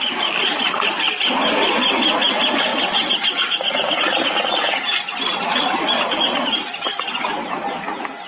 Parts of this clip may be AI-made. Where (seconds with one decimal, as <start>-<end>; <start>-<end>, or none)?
none